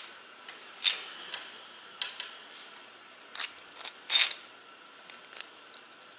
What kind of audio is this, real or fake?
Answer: real